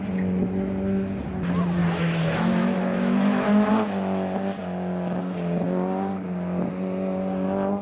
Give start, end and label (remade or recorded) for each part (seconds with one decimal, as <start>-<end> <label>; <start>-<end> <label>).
0.0-1.8 recorded; 1.8-3.7 remade; 3.7-7.8 recorded